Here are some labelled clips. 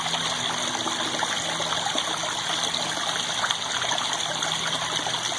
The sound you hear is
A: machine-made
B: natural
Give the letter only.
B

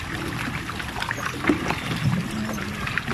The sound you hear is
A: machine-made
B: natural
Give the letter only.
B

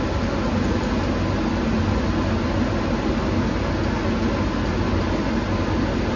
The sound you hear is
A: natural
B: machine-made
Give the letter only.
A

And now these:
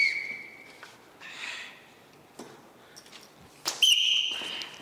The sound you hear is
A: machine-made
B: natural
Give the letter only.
B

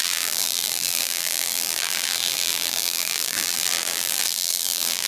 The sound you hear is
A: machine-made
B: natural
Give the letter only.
A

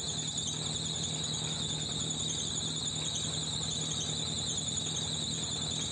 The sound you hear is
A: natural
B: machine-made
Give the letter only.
A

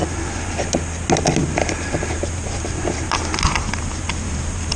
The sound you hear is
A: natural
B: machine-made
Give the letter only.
A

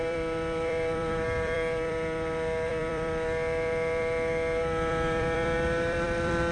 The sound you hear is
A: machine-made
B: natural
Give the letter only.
A